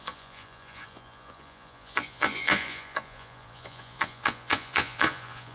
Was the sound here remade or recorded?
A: remade